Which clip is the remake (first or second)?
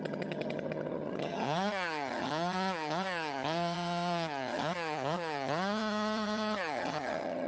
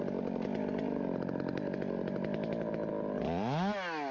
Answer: first